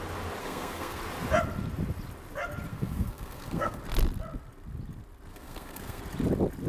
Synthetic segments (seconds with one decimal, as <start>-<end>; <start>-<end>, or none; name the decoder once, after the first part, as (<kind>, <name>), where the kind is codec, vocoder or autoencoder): 0.4-1.0 (codec, SNAC); 2.7-3.8; 5.3-6.0